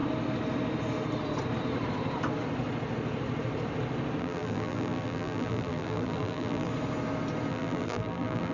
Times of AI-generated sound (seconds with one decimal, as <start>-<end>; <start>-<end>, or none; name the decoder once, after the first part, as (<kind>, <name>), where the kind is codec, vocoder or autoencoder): 4.2-6.7 (vocoder, BigVGAN v2); 7.5-8.5